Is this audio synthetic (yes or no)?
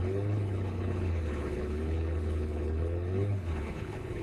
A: yes